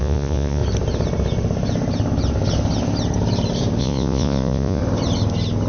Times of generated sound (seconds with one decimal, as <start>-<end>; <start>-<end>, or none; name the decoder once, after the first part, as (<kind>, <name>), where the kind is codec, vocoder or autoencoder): 0.0-0.6 (vocoder, Vocos); 3.8-4.8